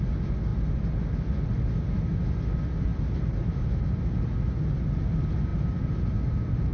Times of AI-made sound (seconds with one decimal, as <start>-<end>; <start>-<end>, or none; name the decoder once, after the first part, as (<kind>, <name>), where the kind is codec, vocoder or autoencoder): 2.9-3.7 (vocoder, BigVGAN v2)